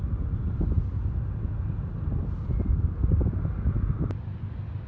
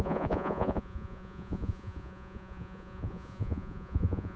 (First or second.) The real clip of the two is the first